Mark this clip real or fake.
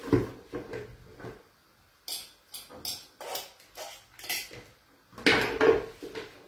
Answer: real